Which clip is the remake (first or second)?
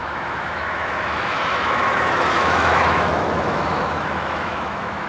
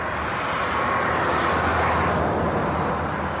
first